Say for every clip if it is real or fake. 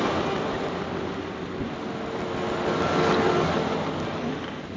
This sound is real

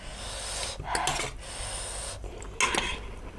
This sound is real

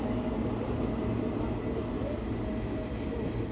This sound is real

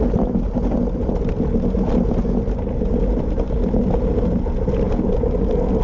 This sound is real